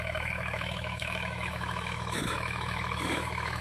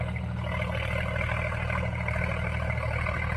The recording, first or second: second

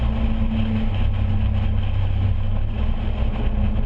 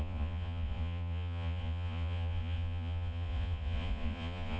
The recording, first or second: first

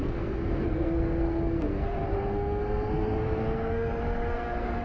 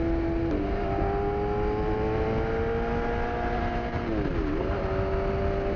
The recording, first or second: second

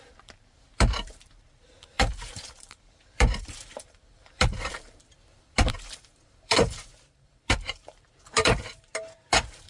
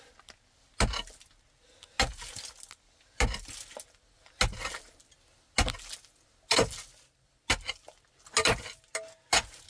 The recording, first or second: second